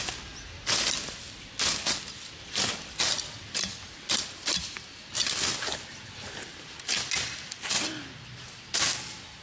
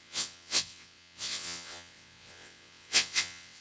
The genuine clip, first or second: first